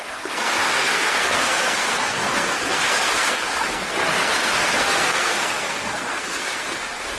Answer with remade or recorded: remade